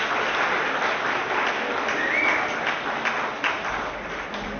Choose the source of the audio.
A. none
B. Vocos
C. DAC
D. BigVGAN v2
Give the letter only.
A